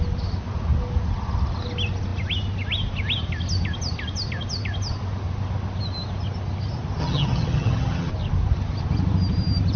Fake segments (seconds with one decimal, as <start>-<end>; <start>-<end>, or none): 7.0-8.1